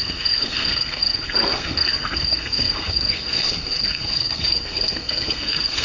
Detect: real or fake fake